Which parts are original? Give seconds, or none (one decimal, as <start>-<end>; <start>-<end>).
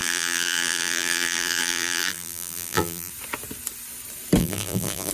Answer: 3.1-4.4